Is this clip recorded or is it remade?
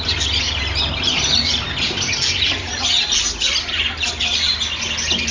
recorded